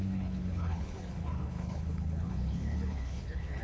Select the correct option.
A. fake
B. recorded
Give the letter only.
A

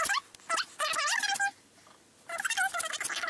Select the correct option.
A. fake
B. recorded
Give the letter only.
B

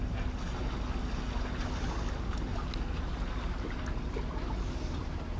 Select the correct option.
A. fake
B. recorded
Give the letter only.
B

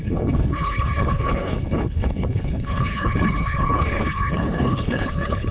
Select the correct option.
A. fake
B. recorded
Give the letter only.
A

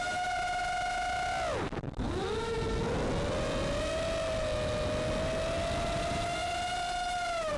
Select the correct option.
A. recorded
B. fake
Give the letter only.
A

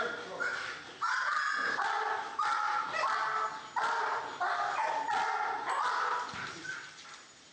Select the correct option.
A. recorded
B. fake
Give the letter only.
A